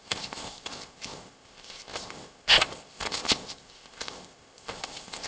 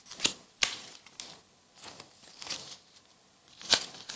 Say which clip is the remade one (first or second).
first